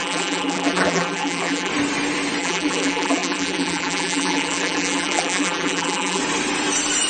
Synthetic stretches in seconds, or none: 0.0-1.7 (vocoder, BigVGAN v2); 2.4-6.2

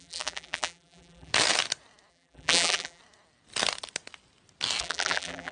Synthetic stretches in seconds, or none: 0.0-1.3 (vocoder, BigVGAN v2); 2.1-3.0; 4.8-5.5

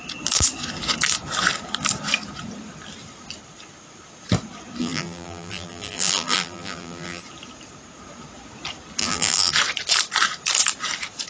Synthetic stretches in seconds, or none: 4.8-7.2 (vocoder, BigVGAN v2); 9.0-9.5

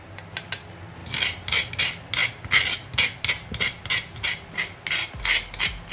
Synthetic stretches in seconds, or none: 1.0-1.7 (vocoder, BigVGAN v2)

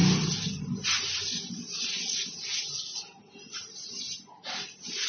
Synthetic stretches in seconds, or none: 3.2-4.0 (vocoder, BigVGAN v2)

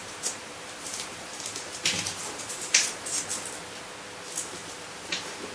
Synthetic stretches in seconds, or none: 0.0-3.3 (vocoder, BigVGAN v2); 4.6-5.5

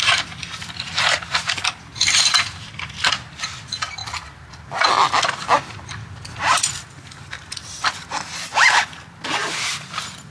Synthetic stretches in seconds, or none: none

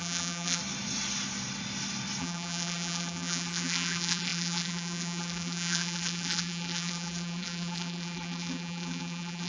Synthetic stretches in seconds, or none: 0.0-0.6 (vocoder, BigVGAN v2); 2.2-9.5